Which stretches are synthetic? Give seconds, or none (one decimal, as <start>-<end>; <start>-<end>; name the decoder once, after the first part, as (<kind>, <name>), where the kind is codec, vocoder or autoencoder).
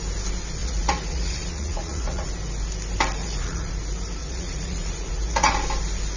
0.6-2.3 (vocoder, Vocos); 3.2-3.7; 4.2-5.5